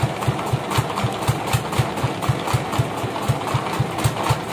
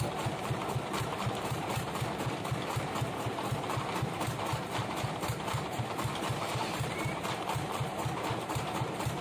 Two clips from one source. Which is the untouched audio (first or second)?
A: first